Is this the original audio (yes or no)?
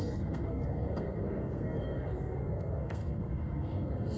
no